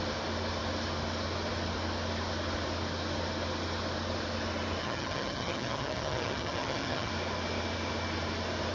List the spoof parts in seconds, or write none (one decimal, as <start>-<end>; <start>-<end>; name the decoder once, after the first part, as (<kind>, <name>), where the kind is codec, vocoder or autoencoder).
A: 4.8-7.1 (vocoder, HiFi-GAN)